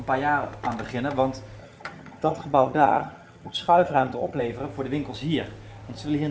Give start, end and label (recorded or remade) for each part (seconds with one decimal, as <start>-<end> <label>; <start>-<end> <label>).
0.0-1.6 recorded; 1.6-4.4 remade; 4.4-6.3 recorded